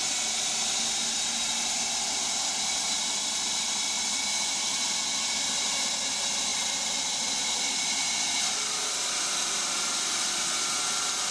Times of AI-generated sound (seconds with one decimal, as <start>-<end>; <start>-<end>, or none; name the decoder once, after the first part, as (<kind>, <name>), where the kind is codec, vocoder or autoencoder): none